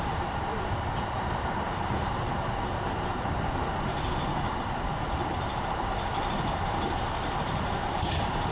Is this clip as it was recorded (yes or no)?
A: no